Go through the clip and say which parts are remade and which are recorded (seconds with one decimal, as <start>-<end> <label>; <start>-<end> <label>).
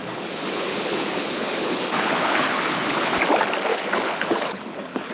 0.0-3.1 remade; 3.1-3.7 recorded; 3.7-5.1 remade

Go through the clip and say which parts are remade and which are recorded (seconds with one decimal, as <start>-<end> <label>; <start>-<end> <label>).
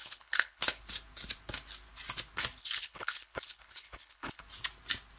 0.0-0.6 remade; 0.6-2.6 recorded; 2.6-4.4 remade; 4.4-5.2 recorded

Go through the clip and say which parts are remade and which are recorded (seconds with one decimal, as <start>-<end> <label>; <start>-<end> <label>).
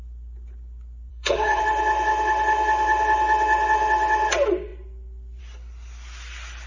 0.0-1.1 recorded; 1.1-1.6 remade; 1.6-6.7 recorded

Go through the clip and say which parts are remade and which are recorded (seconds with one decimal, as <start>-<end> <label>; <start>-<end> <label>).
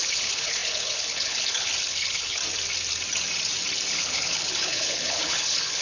0.0-2.4 remade; 2.4-3.9 recorded; 3.9-5.8 remade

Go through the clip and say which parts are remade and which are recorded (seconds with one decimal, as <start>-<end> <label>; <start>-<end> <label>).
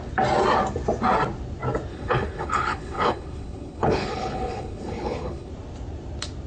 0.0-1.9 recorded; 1.9-5.5 remade; 5.5-6.5 recorded